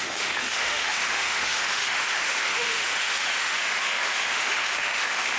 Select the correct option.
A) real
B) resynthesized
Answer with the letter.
B